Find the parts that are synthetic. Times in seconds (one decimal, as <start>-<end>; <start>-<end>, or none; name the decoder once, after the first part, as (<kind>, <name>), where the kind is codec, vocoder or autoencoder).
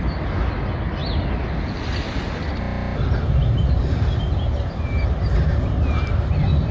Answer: none